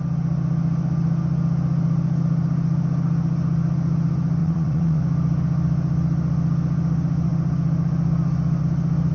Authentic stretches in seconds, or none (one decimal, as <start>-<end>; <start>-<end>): 0.0-4.4; 5.0-9.1